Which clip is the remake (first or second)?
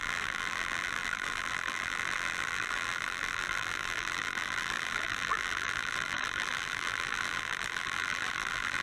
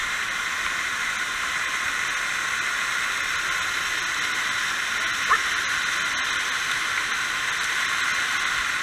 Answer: first